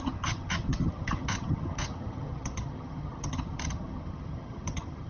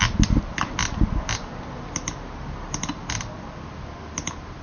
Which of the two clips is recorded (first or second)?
second